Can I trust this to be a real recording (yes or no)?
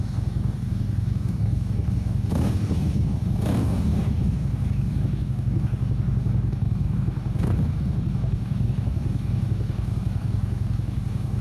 no